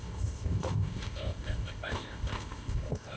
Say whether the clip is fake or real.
fake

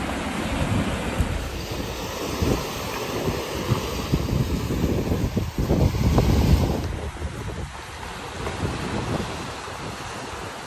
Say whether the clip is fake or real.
real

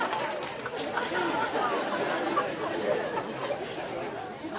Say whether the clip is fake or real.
real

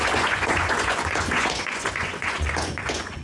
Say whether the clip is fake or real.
fake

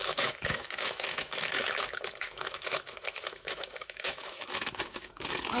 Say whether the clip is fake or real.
fake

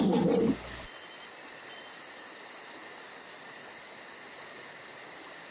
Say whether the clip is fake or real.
real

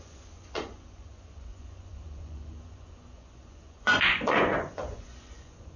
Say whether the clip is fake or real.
fake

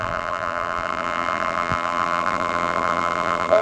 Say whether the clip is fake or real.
fake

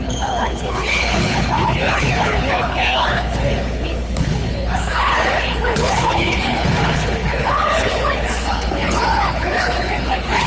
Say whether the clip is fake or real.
fake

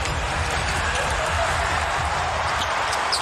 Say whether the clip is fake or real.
fake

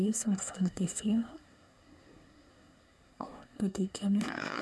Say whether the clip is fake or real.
fake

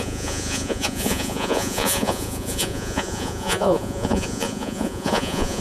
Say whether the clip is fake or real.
fake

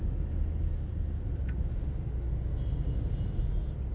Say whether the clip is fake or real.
real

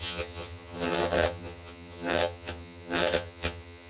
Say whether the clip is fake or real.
fake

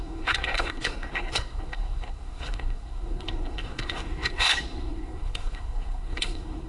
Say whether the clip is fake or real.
fake